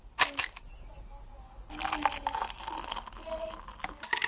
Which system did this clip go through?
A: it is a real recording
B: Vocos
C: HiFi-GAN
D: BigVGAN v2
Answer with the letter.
A